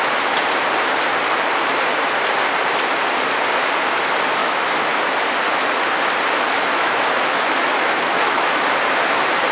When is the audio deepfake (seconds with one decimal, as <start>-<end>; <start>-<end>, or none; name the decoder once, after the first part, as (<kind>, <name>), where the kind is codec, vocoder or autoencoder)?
4.4-5.0 (autoencoder, DAC-VAE); 6.7-8.5